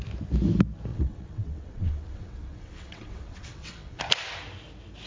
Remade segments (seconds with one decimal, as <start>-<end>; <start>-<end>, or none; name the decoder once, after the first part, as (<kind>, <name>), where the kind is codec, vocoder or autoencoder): 0.9-4.0 (vocoder, WaveNeXt)